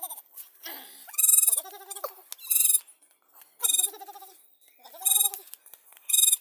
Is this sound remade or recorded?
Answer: recorded